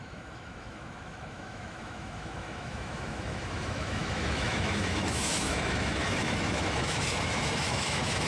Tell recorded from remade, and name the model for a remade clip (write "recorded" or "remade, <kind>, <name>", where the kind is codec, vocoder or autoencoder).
remade, autoencoder, DAC-VAE